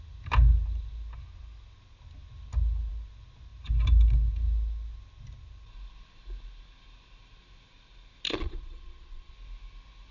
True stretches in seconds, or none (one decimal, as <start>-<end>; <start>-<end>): 0.0-8.3; 9.3-10.1